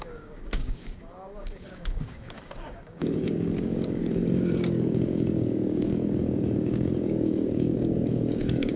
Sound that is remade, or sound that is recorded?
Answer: remade